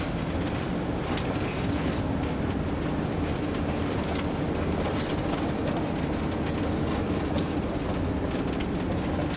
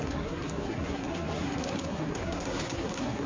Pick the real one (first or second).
first